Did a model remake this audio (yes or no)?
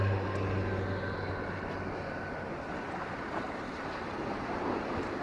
no